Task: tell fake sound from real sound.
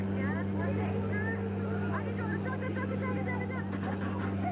real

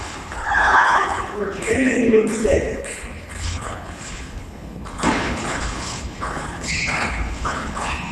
fake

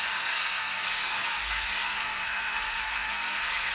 fake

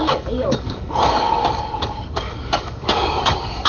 fake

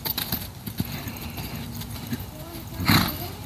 real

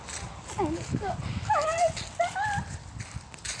real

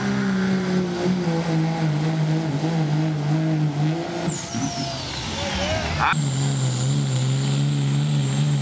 real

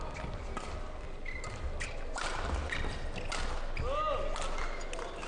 real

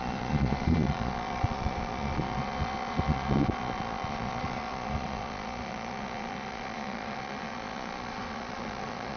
fake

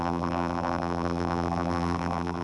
fake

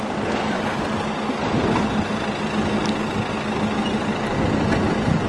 real